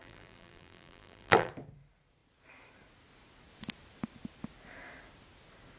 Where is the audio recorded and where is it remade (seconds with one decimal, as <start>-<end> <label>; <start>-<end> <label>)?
0.0-1.5 remade; 1.5-5.8 recorded